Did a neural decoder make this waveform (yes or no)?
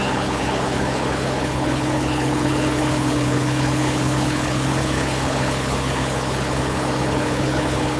yes